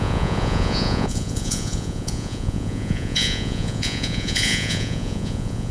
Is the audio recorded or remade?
remade